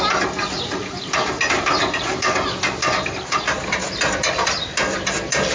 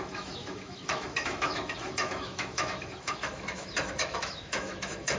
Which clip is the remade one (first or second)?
second